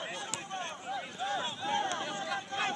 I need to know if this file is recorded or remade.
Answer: recorded